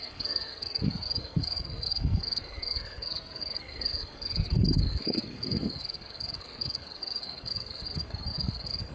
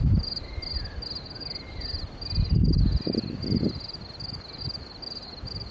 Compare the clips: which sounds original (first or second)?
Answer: second